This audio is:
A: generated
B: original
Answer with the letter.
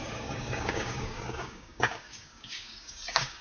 A